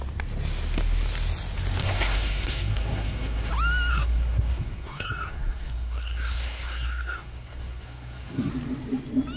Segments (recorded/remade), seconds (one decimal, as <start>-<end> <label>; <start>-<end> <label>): 0.0-1.8 recorded; 1.8-3.5 remade; 3.5-3.9 recorded; 3.9-8.5 remade; 8.5-9.4 recorded